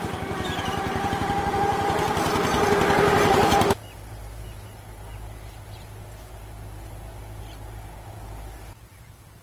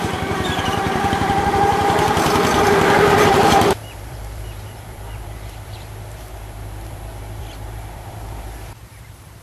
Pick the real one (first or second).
first